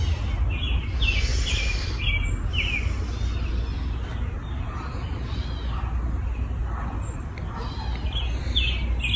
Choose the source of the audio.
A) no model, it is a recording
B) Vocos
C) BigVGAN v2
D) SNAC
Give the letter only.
A